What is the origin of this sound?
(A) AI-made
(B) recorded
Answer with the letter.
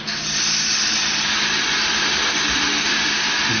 B